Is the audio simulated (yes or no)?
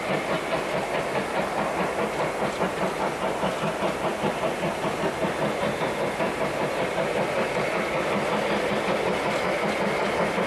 no